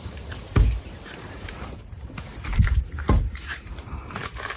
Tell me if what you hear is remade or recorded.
remade